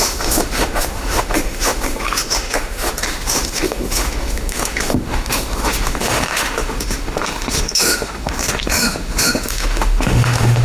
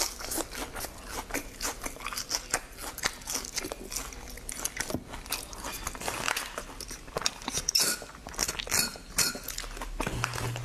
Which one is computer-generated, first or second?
first